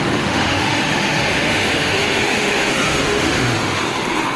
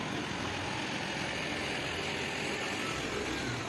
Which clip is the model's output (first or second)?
first